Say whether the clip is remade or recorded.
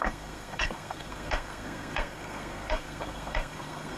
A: remade